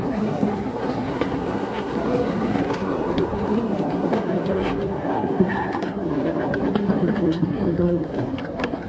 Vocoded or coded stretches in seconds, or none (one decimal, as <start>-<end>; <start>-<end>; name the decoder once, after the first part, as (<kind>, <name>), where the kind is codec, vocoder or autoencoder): 0.0-8.9 (codec, SNAC)